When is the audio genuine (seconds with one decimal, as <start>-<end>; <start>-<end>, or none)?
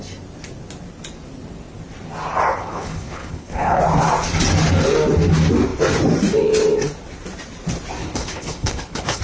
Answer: 0.0-2.5; 3.8-8.0